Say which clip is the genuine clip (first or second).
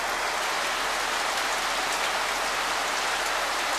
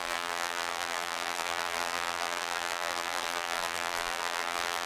first